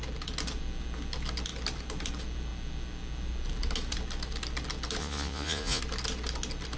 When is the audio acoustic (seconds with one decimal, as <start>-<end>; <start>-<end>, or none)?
0.0-5.0; 5.8-6.8